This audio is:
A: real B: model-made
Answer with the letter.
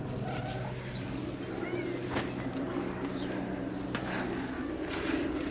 A